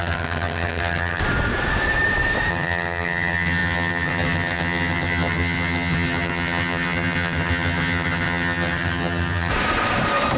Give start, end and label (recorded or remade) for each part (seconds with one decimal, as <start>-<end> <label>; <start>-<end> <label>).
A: 0.0-1.2 remade; 1.2-2.5 recorded; 2.5-9.5 remade; 9.5-10.4 recorded